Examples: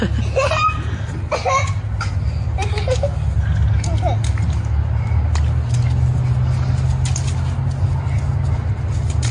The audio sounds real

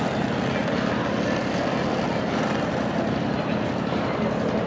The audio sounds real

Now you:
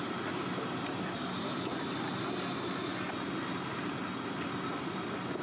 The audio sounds real